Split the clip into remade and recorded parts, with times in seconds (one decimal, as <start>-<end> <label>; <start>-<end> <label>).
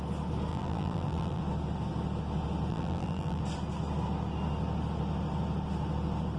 0.0-0.5 recorded; 0.5-1.4 remade; 1.4-2.7 recorded; 2.7-3.4 remade; 3.4-6.4 recorded